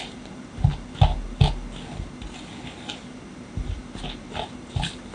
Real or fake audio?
real